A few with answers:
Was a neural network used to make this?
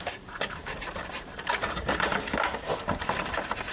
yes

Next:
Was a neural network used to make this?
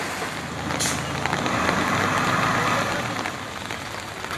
no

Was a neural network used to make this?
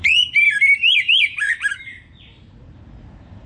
yes